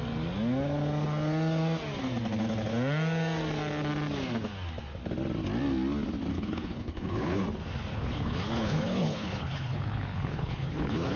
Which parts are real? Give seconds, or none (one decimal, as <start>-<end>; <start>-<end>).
0.0-6.3; 7.4-7.9